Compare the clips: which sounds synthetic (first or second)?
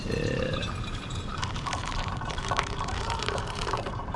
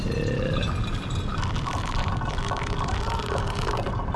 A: first